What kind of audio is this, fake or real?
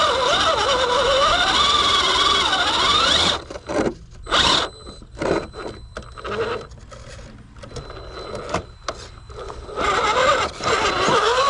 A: real